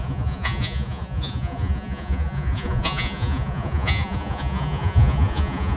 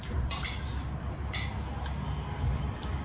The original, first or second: second